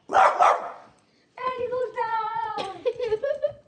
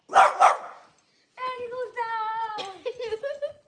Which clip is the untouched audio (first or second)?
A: second